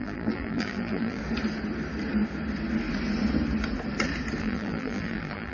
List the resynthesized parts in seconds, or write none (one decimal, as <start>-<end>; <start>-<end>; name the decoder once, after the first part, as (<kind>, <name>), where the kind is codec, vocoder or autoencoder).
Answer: 0.0-1.2 (vocoder, BigVGAN v2); 4.4-5.5